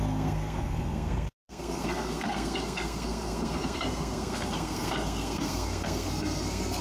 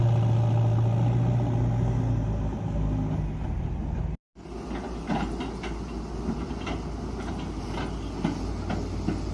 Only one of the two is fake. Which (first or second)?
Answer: first